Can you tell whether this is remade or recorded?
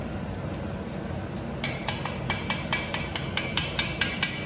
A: recorded